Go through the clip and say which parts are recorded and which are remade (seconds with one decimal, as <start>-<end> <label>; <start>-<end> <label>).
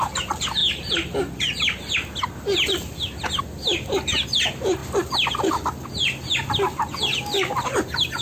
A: 0.0-8.2 recorded